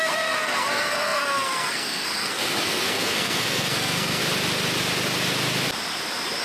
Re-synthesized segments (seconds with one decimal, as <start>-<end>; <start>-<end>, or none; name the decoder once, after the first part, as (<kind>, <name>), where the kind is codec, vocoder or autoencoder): 0.0-4.2 (codec, SNAC)